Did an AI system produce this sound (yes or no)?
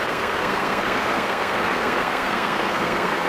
yes